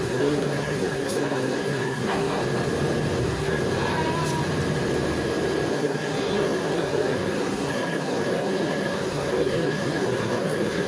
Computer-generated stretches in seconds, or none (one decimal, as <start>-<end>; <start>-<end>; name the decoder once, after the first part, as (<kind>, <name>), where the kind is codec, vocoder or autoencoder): 0.0-2.4 (codec, SNAC); 3.2-3.6; 5.7-10.9